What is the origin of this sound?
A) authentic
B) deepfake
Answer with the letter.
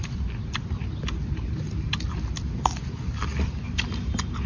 A